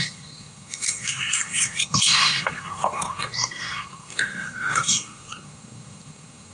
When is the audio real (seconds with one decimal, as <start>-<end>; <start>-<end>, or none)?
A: none